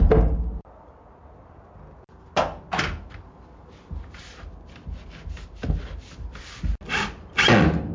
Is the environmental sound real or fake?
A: real